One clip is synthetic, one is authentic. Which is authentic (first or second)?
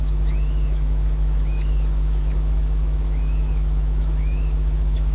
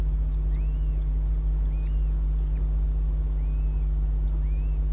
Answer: second